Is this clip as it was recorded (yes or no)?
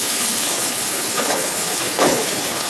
no